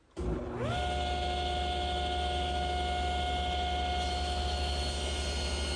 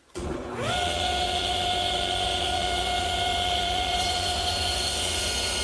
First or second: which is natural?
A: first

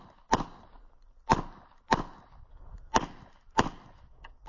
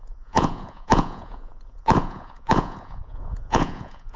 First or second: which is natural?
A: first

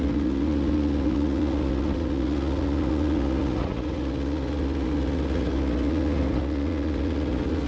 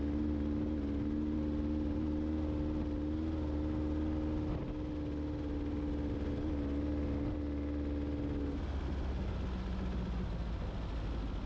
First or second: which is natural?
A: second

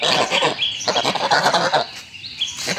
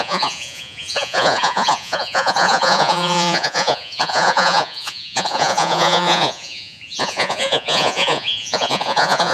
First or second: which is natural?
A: first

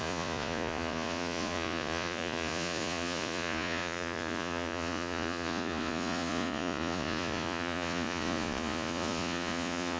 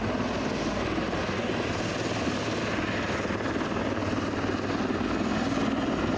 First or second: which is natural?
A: second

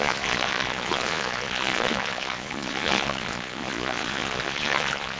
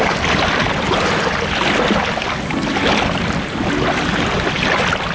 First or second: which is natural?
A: second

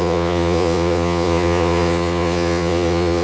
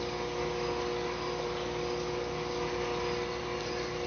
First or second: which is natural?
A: second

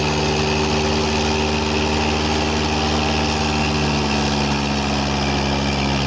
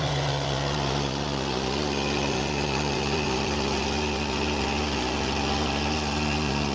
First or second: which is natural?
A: first